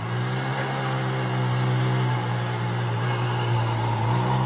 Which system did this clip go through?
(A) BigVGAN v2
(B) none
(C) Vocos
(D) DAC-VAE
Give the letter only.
B